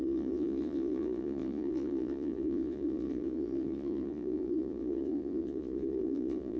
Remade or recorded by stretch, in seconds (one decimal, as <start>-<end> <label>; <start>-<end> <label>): 0.0-6.6 remade